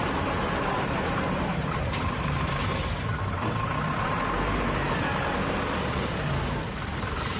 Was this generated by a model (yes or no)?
yes